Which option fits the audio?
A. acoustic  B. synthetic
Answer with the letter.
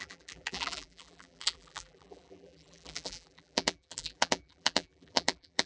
B